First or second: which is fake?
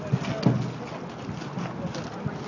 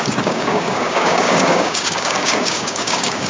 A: second